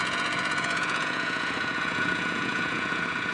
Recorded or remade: remade